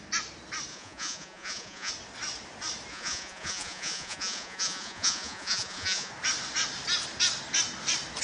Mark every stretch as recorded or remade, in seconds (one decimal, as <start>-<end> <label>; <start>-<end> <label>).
0.0-0.7 recorded; 0.7-1.9 remade; 1.9-2.9 recorded; 2.9-6.1 remade; 6.1-8.2 recorded